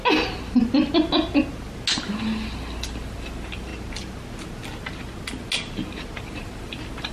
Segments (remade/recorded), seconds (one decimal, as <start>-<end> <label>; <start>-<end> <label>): 0.0-2.0 recorded; 2.0-3.7 remade; 3.7-6.2 recorded; 6.2-7.1 remade